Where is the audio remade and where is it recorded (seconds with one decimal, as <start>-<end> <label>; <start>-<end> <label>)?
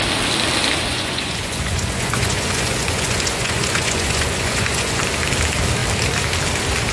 0.0-0.9 recorded; 0.9-5.0 remade; 5.0-6.9 recorded